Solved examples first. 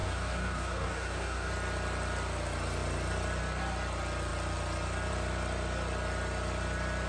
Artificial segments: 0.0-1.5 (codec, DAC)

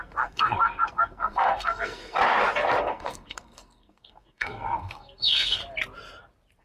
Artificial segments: 0.0-2.2 (codec, SNAC); 2.8-5.6